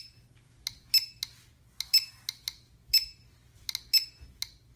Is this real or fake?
real